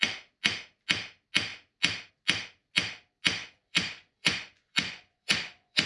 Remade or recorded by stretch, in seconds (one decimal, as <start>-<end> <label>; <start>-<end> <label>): 0.0-3.4 recorded; 3.4-5.9 remade